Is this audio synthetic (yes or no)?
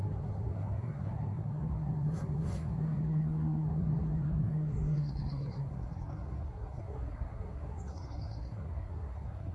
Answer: yes